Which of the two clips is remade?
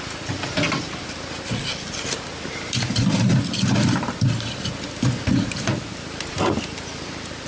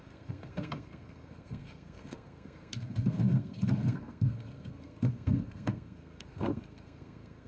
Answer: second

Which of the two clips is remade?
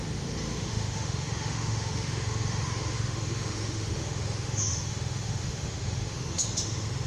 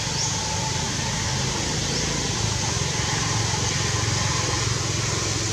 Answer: first